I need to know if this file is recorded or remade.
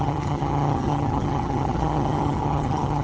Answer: remade